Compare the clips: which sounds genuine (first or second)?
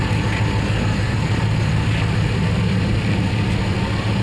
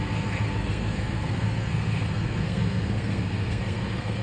first